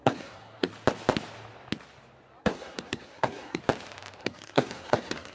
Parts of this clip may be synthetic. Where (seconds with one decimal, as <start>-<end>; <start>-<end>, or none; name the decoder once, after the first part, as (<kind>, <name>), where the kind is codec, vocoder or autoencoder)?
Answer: 0.0-0.7 (codec, SNAC); 2.4-3.6; 4.2-5.3